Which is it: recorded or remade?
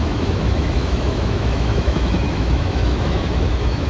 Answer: remade